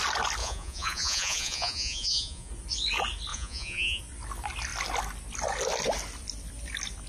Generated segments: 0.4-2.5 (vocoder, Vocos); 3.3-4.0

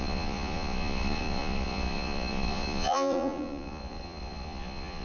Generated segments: 0.0-5.0 (vocoder, Vocos)

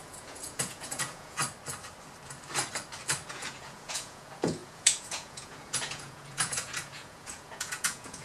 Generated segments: 0.0-1.4 (vocoder, Vocos); 3.3-8.2

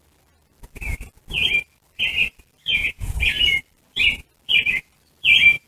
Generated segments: 2.7-3.3 (vocoder, Vocos)

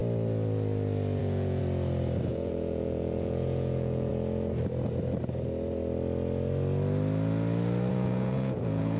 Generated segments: 1.2-1.6 (vocoder, Vocos); 2.3-4.1; 7.9-9.0